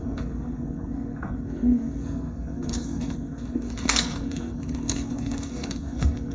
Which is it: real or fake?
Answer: fake